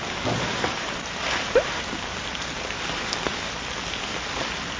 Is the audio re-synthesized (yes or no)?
no